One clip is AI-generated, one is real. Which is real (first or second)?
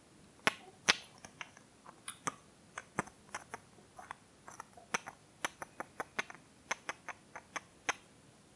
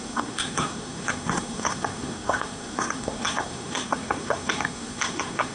first